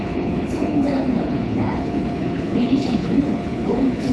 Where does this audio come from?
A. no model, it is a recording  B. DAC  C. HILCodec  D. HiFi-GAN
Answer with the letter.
C